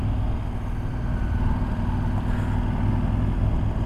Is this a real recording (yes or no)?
yes